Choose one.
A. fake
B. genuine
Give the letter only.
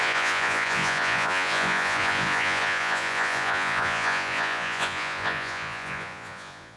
A